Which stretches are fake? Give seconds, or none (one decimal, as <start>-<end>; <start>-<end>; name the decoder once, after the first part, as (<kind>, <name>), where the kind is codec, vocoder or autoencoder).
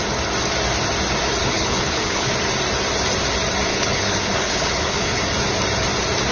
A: 1.4-2.3 (codec, HILCodec); 3.7-5.2